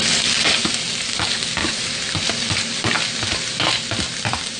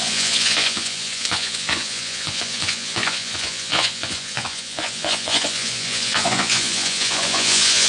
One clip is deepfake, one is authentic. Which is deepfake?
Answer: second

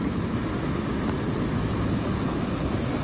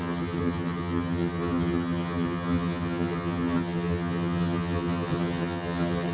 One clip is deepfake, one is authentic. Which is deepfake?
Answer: second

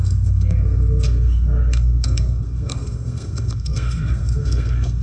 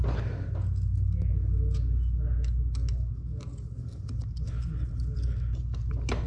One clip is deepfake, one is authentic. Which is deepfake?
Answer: first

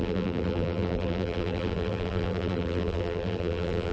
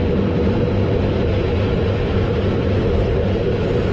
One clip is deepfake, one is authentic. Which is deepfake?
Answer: first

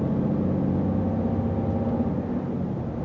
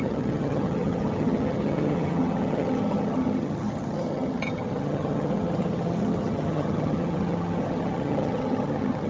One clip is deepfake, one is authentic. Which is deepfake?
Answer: second